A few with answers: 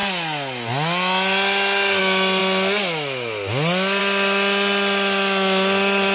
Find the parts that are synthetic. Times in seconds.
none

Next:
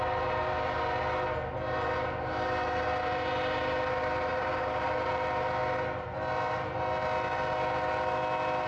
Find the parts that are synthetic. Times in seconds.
4.3-5.1 (vocoder, BigVGAN v2)

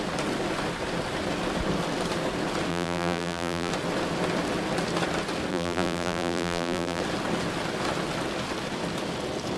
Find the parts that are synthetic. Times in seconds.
2.7-3.7 (vocoder, BigVGAN v2); 5.5-7.0

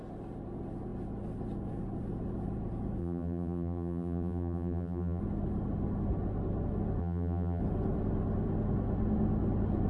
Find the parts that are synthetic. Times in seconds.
3.0-5.2 (vocoder, BigVGAN v2); 7.0-7.6

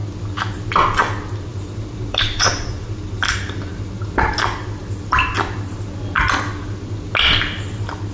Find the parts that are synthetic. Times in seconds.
1.5-4.0 (vocoder, BigVGAN v2)

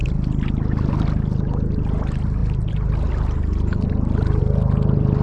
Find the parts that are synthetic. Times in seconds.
none